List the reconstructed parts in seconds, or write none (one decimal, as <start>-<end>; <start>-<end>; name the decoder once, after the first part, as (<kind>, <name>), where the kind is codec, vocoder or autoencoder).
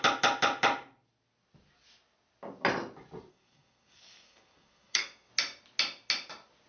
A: 3.3-5.3 (codec, SNAC)